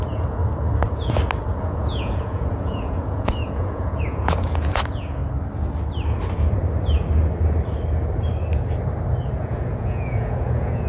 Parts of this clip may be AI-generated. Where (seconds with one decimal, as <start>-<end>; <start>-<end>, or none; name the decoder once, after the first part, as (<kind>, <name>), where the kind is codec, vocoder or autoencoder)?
0.0-0.4 (vocoder, Vocos); 1.6-5.2; 9.4-10.9